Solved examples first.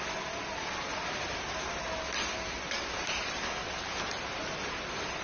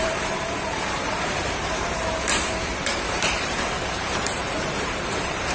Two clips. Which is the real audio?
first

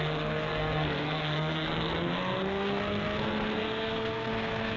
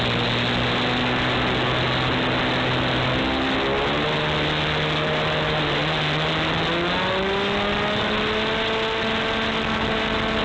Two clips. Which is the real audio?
second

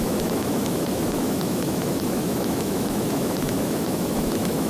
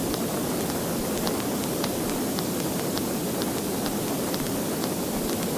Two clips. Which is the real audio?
second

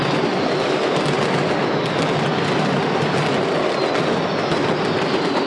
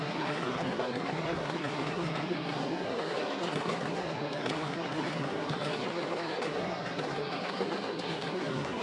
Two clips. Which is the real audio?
first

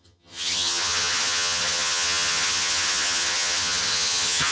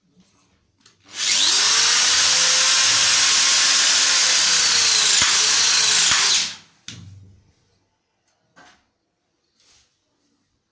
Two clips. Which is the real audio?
second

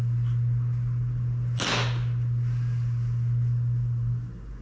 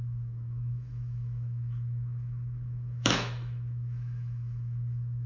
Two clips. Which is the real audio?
first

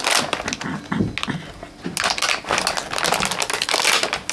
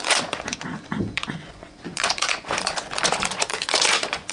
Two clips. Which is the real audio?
first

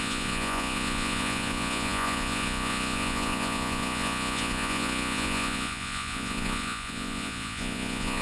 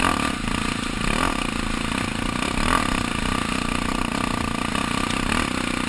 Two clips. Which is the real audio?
second